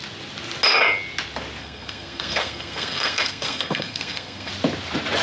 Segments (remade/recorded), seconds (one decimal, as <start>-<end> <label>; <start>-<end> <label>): 0.0-1.6 recorded; 1.6-4.5 remade; 4.5-5.2 recorded